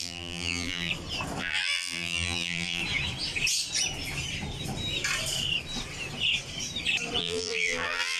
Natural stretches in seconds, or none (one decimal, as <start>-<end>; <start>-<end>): 0.9-1.4; 2.8-7.2